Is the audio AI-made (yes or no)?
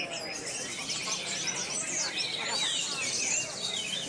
no